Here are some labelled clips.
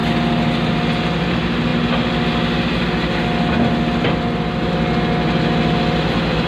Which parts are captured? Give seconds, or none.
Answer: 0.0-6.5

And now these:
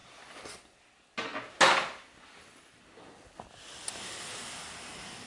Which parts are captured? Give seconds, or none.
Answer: 0.0-5.3

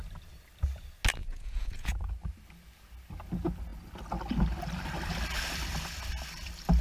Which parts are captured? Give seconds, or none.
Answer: 0.0-1.2; 2.1-6.8

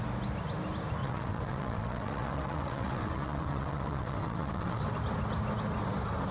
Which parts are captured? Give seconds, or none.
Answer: 0.0-1.0; 4.8-6.3

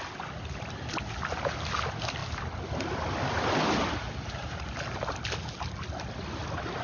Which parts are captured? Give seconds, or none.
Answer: 0.0-6.8

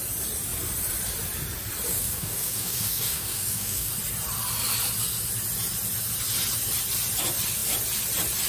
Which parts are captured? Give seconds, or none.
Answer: 0.0-1.9; 3.9-8.5

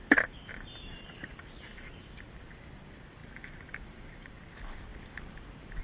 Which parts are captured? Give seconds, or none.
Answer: 0.0-3.2; 4.3-5.8

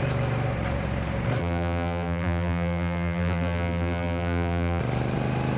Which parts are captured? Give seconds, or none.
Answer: 0.0-1.4; 4.8-5.6